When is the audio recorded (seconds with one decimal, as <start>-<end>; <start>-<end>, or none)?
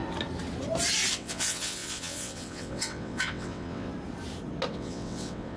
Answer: 0.0-1.1; 3.9-4.7